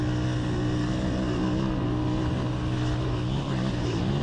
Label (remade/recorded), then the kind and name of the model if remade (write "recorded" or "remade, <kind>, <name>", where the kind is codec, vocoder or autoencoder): recorded